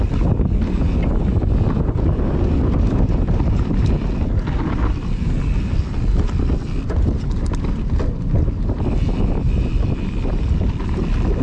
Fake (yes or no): no